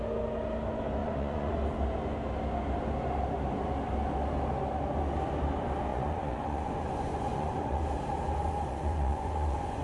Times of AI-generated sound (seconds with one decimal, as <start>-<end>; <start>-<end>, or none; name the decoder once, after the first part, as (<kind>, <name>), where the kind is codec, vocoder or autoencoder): 1.0-1.5 (vocoder, Vocos); 5.9-7.8; 8.4-9.8